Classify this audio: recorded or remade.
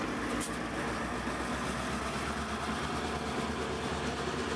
recorded